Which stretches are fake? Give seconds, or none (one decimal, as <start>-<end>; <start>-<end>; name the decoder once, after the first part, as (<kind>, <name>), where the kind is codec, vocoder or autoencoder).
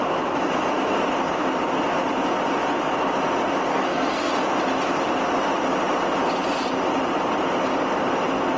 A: 3.7-4.3 (codec, SNAC)